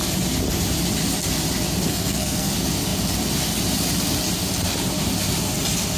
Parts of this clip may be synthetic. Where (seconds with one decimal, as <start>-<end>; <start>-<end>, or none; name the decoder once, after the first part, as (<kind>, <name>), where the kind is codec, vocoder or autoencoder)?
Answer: 1.8-2.5 (codec, SNAC)